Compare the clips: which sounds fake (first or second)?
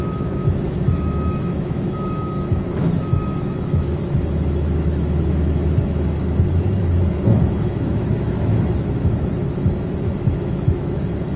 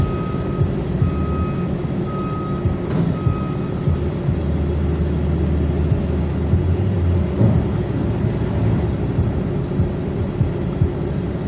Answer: first